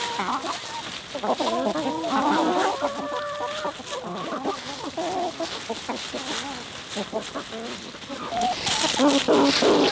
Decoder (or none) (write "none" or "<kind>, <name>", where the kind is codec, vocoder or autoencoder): none